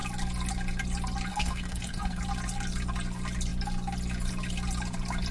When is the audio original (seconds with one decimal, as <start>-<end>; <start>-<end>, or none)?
0.0-1.3; 2.2-5.3